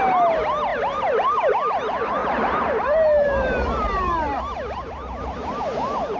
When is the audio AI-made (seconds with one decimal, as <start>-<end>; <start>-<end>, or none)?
0.7-1.5; 2.2-5.6